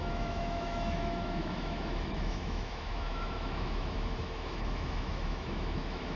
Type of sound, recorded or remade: remade